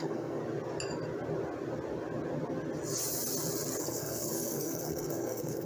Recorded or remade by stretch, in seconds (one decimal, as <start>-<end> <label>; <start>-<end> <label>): 0.0-0.4 remade; 0.4-3.8 recorded; 3.8-5.7 remade